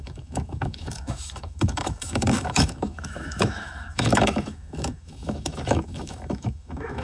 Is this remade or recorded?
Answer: remade